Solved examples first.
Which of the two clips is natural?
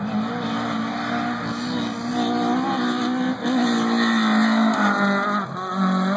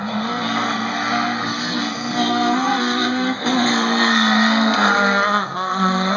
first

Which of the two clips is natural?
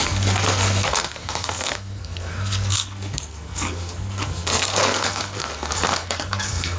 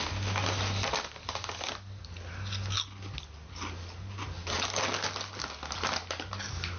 second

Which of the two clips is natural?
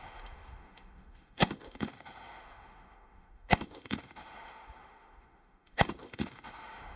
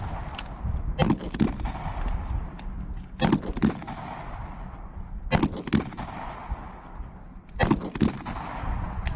second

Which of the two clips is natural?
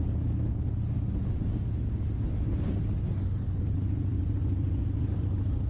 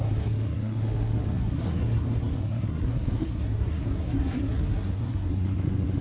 first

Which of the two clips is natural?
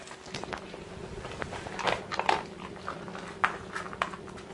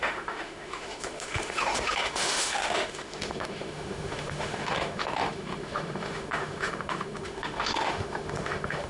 first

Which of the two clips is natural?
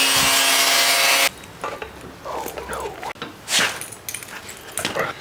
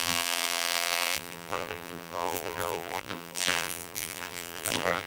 first